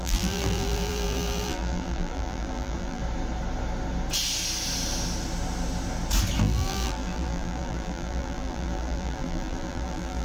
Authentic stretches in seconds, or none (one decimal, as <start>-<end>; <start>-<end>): 3.0-6.4

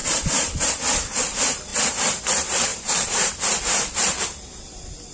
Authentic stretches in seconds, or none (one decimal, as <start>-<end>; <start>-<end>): 0.0-2.7; 3.3-5.1